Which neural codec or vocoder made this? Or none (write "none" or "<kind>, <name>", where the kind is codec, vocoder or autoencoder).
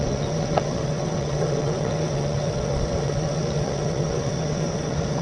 vocoder, WaveNeXt